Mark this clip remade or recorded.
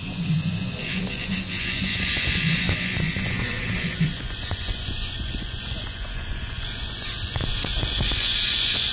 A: remade